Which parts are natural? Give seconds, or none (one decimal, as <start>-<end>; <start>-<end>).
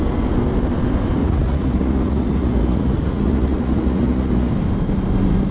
0.0-1.2; 4.5-5.5